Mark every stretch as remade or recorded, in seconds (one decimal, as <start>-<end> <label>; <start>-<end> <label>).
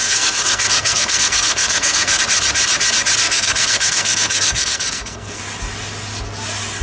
0.0-2.2 remade; 2.2-3.2 recorded; 3.2-5.4 remade; 5.4-6.8 recorded